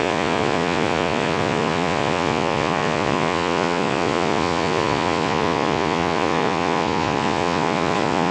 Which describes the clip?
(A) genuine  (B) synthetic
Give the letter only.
B